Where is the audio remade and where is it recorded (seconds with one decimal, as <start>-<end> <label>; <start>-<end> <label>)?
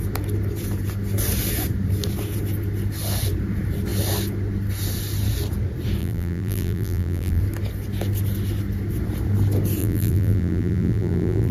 0.0-6.0 recorded; 6.0-7.4 remade; 7.4-9.8 recorded; 9.8-11.5 remade